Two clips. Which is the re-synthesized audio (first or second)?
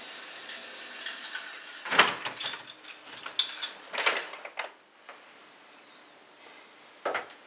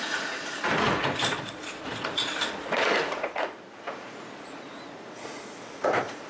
second